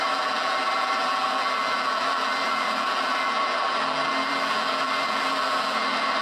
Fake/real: fake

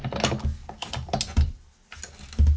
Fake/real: real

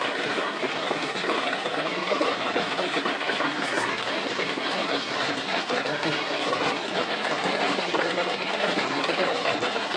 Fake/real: fake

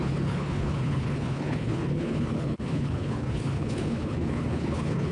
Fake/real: fake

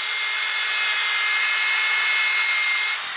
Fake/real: real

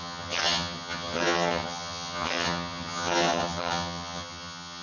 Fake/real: fake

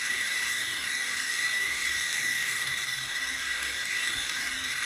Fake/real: fake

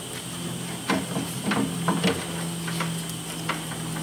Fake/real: real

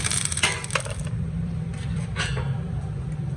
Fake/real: fake